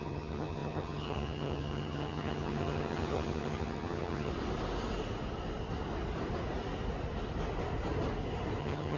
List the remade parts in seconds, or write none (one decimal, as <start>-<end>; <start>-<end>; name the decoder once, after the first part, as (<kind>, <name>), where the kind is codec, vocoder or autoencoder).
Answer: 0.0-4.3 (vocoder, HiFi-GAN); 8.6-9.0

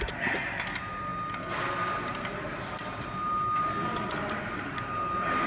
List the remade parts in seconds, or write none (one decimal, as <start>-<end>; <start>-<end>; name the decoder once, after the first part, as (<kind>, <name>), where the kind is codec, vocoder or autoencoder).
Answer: none

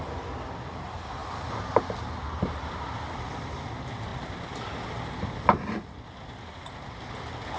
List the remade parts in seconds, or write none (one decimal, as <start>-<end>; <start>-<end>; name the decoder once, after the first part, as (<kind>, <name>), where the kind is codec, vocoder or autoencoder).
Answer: none